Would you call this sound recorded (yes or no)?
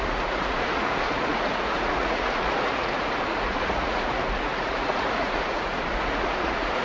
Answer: no